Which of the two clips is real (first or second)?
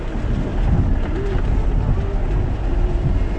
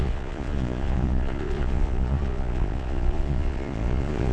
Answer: first